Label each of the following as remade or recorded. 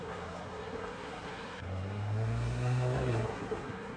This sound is remade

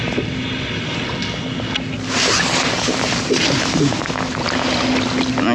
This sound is recorded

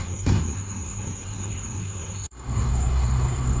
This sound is remade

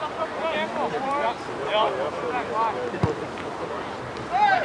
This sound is recorded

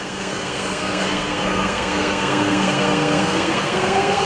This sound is remade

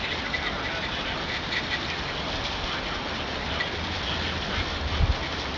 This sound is recorded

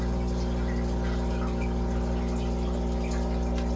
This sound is recorded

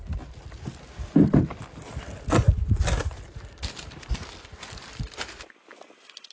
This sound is recorded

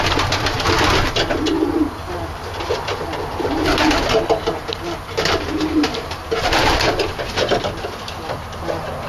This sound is recorded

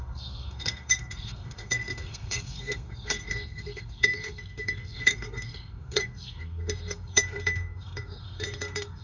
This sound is remade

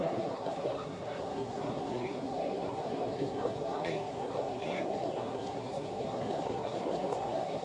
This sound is remade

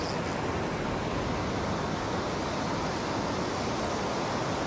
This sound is recorded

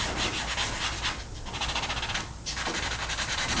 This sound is recorded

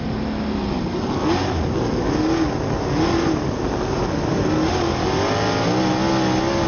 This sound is recorded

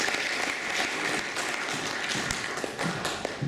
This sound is recorded